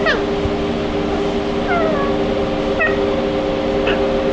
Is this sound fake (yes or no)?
no